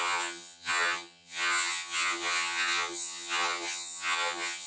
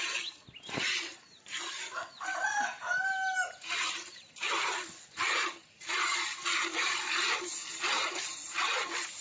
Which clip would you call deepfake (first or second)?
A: first